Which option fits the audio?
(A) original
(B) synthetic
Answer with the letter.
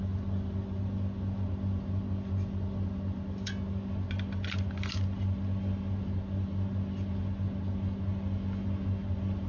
A